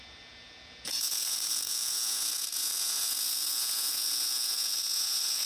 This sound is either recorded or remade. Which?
remade